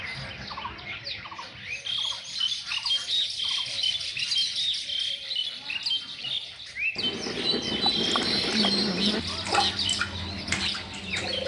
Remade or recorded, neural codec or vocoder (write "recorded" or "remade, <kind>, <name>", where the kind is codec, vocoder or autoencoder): recorded